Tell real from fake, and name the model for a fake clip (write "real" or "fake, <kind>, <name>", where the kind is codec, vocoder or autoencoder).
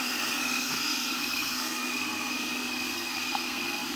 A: fake, codec, SNAC